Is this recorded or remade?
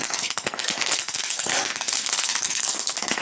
remade